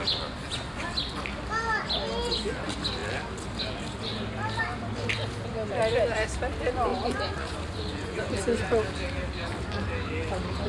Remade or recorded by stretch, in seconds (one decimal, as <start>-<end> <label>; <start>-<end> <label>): 0.0-6.9 recorded; 6.9-8.3 remade; 8.3-10.7 recorded